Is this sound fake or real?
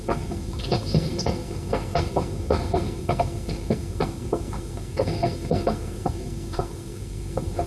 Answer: fake